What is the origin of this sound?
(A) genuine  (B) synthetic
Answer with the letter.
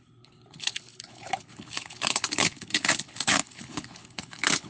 B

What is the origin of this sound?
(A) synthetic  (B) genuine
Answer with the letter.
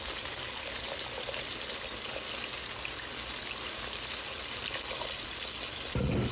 B